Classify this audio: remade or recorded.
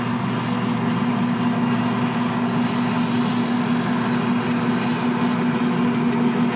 recorded